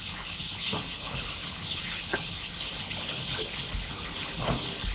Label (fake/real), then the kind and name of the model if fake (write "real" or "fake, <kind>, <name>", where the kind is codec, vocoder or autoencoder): fake, codec, HILCodec